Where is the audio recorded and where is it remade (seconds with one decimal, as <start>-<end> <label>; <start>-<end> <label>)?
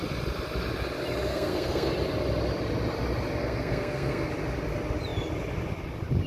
0.0-1.3 recorded; 1.3-1.9 remade; 1.9-3.4 recorded; 3.4-4.3 remade; 4.3-6.3 recorded